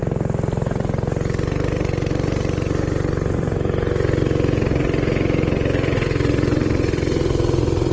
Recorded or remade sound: recorded